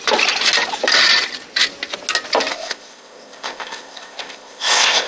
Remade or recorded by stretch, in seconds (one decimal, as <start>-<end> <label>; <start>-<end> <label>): 0.0-2.5 recorded; 2.5-5.1 remade